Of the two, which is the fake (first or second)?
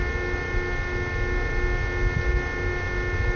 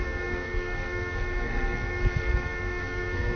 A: second